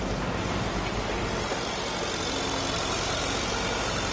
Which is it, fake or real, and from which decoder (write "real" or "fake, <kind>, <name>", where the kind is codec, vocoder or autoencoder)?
real